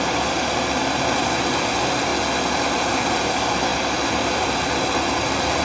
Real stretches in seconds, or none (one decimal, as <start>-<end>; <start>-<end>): 0.0-5.6